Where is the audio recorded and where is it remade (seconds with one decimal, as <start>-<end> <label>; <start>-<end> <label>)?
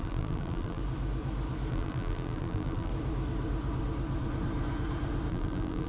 0.0-0.8 remade; 0.8-1.7 recorded; 1.7-2.9 remade; 2.9-5.3 recorded; 5.3-5.9 remade